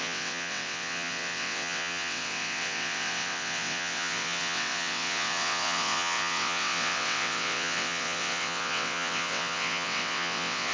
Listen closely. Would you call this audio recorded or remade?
remade